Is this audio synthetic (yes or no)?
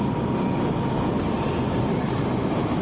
no